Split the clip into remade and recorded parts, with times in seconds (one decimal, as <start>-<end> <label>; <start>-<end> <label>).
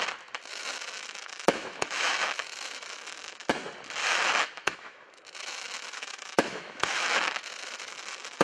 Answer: 0.0-0.5 recorded; 0.5-3.5 remade; 3.5-4.0 recorded; 4.0-8.4 remade